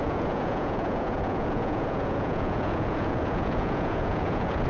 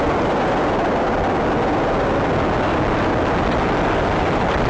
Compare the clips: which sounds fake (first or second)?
first